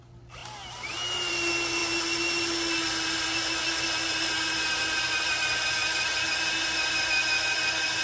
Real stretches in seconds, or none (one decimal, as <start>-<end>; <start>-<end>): 0.0-8.0